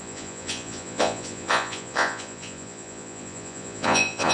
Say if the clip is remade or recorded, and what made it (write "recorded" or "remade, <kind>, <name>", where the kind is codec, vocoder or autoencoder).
remade, vocoder, Vocos